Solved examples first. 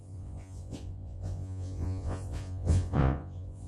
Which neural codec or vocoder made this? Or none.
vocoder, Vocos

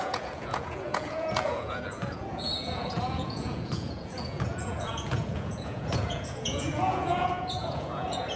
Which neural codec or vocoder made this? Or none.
vocoder, Vocos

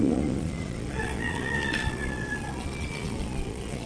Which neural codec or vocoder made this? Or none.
vocoder, Vocos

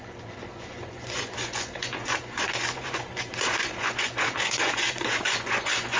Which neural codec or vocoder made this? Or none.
vocoder, Vocos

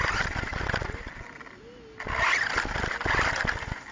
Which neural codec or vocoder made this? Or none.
none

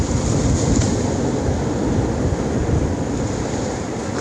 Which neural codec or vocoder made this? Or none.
none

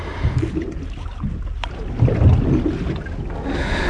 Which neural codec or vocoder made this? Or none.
none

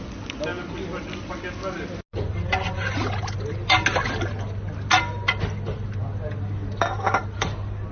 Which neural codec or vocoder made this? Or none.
none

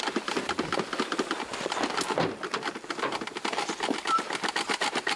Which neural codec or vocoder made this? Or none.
none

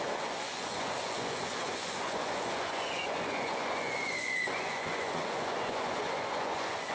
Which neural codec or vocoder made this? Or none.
vocoder, Vocos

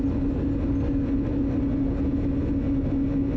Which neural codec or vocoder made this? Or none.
none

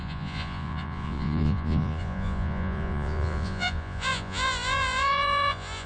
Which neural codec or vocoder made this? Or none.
vocoder, Vocos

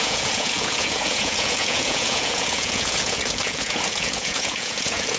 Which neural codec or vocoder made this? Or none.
vocoder, Vocos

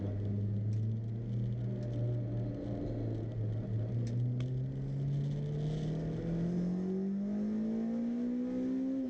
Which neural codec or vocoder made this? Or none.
none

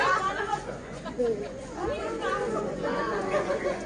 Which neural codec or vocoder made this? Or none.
vocoder, Vocos